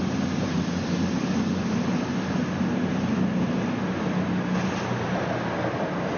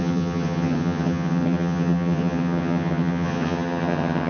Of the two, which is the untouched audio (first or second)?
first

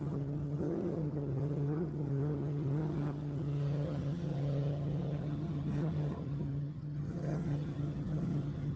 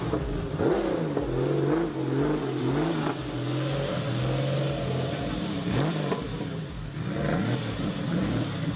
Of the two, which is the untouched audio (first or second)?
second